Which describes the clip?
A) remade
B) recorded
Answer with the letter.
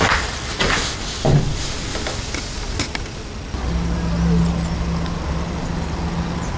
B